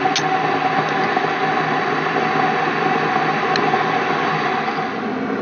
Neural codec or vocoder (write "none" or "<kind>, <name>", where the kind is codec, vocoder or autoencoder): none